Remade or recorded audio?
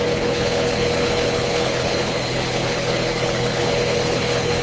remade